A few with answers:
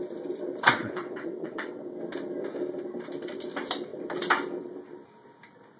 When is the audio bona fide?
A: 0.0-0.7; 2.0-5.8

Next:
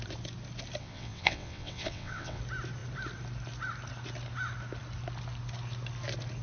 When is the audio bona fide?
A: 0.0-0.8; 2.4-6.4

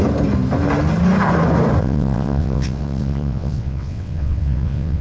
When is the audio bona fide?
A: 0.0-1.8

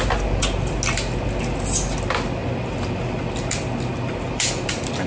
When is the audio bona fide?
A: 0.0-5.1

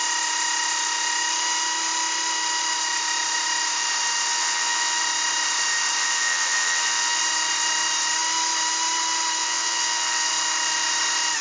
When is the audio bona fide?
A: 0.0-4.3; 5.0-6.0; 7.2-9.4; 10.3-11.4

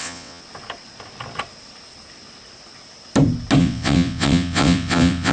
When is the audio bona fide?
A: 0.4-3.6

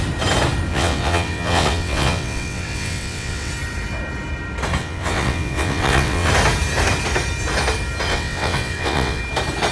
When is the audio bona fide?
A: 0.0-0.7; 3.5-4.8; 6.3-8.1; 9.2-9.7

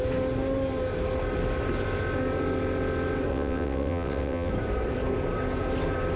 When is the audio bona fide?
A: 0.0-3.3; 4.5-6.2